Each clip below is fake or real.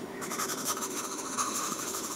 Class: fake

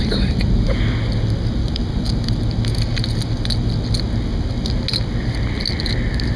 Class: real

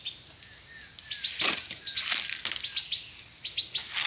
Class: real